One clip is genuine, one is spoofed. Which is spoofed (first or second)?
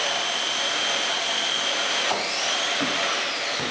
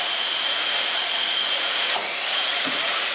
second